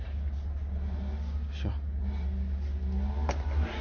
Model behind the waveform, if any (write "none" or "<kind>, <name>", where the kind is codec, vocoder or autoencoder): none